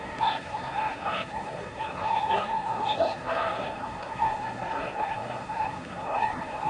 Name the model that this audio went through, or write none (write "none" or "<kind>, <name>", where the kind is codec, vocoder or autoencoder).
codec, SNAC